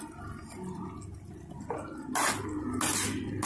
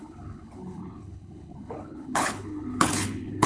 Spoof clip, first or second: second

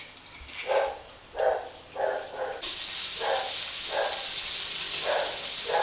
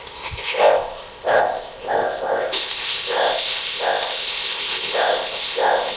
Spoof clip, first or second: second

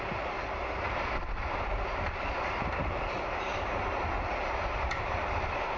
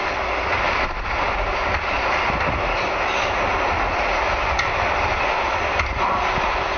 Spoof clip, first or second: first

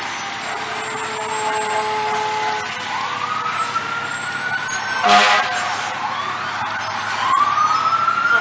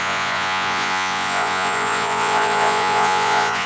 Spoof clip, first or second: second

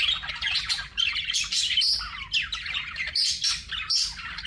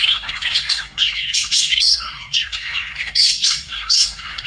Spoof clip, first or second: second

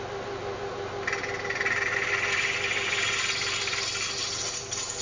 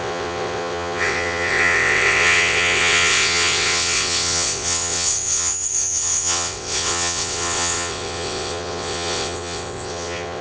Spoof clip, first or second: second